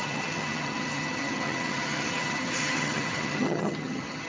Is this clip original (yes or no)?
no